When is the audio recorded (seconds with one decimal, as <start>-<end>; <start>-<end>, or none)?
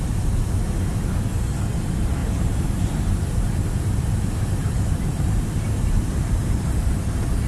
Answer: 0.0-2.2; 6.7-7.5